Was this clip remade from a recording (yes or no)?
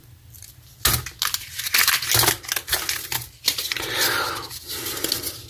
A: no